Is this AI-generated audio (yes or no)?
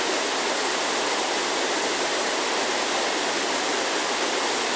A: no